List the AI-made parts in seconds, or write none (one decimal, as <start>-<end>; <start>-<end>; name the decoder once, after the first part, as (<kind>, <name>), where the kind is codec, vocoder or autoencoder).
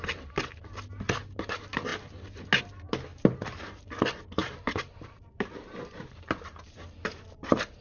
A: 3.1-3.8 (vocoder, BigVGAN v2); 4.4-7.8